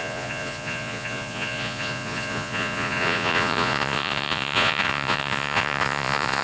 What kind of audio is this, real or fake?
fake